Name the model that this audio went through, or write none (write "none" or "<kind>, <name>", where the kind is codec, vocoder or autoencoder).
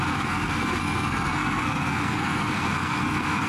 codec, SNAC